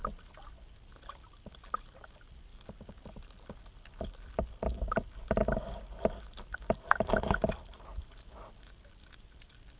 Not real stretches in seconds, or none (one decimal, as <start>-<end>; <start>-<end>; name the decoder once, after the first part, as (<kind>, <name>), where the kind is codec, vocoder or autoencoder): none